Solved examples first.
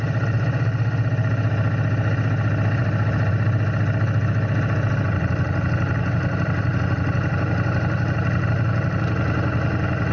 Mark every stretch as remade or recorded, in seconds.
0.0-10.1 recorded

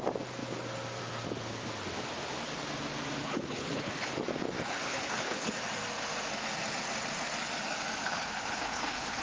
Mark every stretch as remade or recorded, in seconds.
0.0-3.2 recorded; 3.2-4.1 remade; 4.1-4.9 recorded; 4.9-5.5 remade; 5.5-8.0 recorded; 8.0-9.2 remade

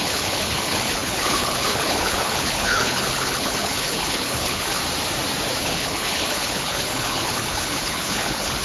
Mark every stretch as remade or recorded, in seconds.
0.0-4.8 remade; 4.8-5.6 recorded; 5.6-8.6 remade

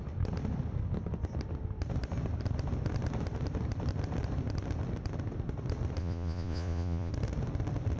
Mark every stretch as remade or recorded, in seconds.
0.0-6.0 recorded; 6.0-7.1 remade; 7.1-8.0 recorded

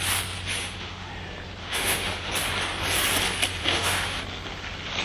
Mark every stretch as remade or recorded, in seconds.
0.0-0.6 recorded; 0.6-1.1 remade; 1.1-1.6 recorded; 1.6-2.3 remade; 2.3-3.6 recorded; 3.6-4.2 remade; 4.2-5.0 recorded

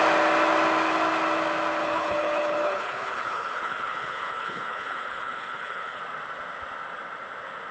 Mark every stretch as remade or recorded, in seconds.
0.0-1.8 recorded; 1.8-6.0 remade; 6.0-7.7 recorded

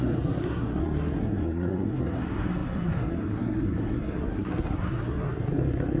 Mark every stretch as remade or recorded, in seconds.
0.0-6.0 remade

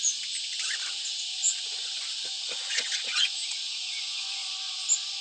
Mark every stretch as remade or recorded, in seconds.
0.0-1.4 recorded; 1.4-4.5 remade; 4.5-5.2 recorded